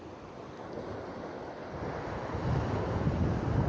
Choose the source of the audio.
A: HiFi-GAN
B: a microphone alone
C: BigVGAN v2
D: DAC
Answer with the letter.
B